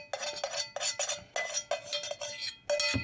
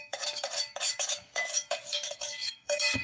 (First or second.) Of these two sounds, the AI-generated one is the second